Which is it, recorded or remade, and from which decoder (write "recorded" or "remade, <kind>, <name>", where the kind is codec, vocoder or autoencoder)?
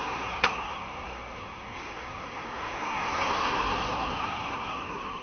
remade, codec, SNAC